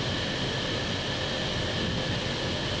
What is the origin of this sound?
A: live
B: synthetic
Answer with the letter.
A